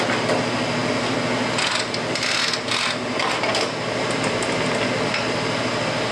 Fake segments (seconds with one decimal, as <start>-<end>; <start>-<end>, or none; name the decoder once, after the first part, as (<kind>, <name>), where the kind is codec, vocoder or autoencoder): none